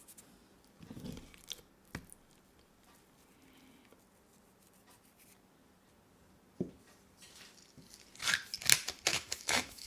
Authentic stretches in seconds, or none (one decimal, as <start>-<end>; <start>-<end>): 0.0-9.1